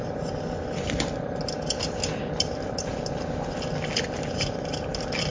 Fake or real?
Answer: real